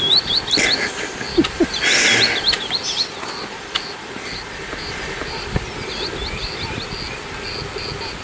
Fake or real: real